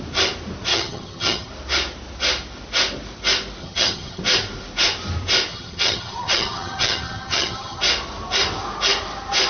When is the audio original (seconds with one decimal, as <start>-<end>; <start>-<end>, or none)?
0.0-0.7; 1.5-3.6; 4.2-5.5; 7.8-9.5